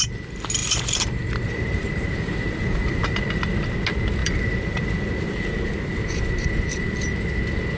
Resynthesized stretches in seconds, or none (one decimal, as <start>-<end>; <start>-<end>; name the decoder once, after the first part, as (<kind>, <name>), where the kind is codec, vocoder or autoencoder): 0.6-3.2 (vocoder, BigVGAN v2); 4.2-7.1